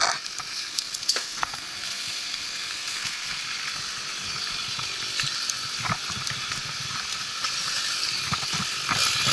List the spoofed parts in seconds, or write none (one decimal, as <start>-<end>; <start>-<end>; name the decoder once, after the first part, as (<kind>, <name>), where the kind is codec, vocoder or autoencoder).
0.5-3.4 (codec, SNAC)